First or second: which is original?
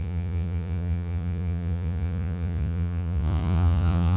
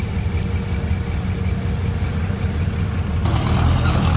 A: second